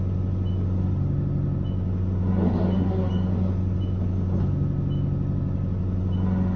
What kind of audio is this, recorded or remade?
recorded